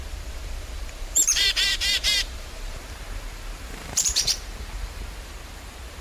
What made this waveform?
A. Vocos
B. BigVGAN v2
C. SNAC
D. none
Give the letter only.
B